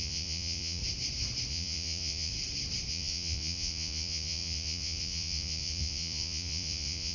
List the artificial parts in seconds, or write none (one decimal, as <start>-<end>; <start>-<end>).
0.0-0.8; 1.5-2.3; 2.9-7.1